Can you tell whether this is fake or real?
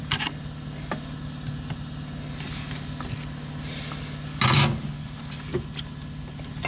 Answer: real